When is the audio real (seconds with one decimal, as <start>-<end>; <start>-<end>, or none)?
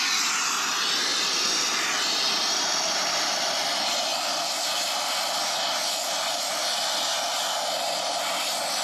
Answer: 0.0-1.1; 2.1-8.8